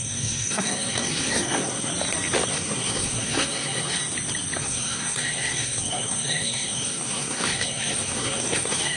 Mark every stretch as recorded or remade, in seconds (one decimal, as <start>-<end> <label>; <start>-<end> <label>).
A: 0.0-1.9 remade; 1.9-2.5 recorded; 2.5-4.0 remade; 4.0-4.6 recorded; 4.6-9.0 remade